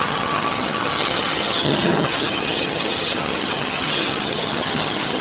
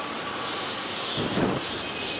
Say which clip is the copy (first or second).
first